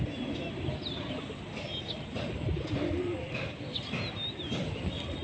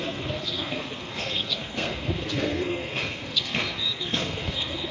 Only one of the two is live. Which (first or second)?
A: first